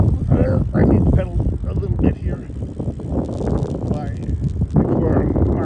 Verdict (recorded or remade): recorded